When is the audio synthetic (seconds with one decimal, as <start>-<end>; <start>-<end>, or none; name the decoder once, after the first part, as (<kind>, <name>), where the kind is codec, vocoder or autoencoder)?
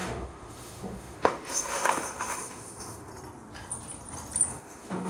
0.0-3.1 (autoencoder, DAC-VAE); 4.5-5.1